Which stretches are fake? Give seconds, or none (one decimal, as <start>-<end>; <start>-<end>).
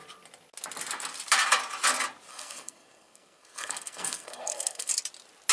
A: 2.3-4.9